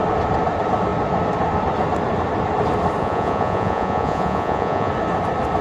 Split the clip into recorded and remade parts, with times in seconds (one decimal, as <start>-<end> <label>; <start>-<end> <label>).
0.0-3.0 recorded; 3.0-4.9 remade; 4.9-5.6 recorded